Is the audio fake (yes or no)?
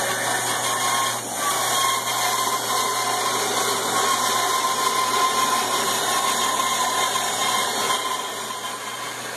no